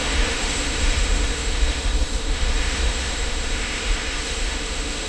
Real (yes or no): no